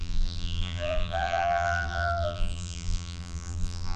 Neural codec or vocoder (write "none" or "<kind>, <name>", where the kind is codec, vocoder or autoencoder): vocoder, BigVGAN v2